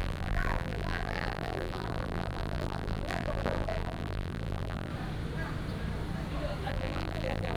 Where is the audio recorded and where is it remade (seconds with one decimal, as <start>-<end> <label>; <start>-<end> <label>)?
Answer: 0.0-4.9 remade; 4.9-6.7 recorded; 6.7-7.6 remade